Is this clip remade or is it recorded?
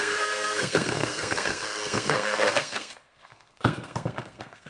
remade